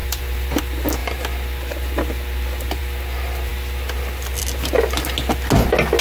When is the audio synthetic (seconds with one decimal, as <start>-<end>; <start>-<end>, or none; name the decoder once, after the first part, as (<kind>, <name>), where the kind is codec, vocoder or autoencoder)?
0.0-0.6 (vocoder, BigVGAN v2)